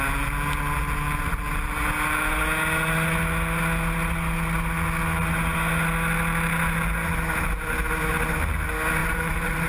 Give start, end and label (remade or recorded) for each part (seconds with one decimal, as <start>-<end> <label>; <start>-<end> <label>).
0.0-9.0 recorded; 9.0-9.7 remade